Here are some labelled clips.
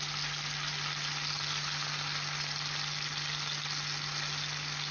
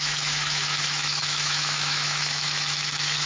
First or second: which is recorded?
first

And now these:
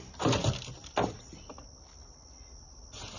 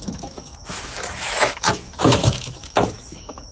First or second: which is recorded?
first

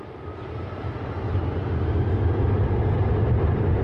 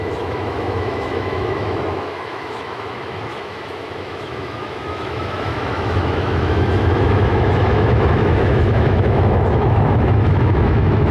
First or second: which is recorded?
first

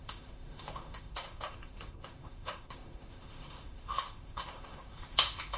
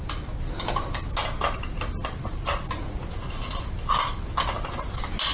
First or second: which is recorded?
second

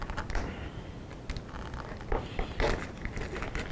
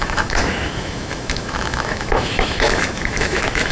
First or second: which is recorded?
first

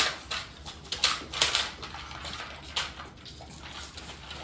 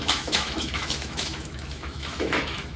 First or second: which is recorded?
first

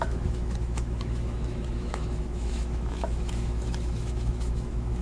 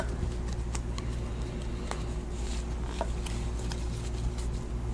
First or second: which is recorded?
second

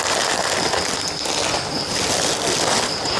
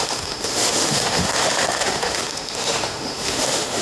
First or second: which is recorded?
first